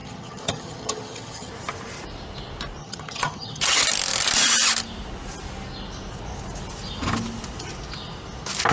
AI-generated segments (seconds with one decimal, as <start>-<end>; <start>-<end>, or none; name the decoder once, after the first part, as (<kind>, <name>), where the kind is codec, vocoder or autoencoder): 0.0-1.5 (vocoder, HiFi-GAN); 2.8-3.6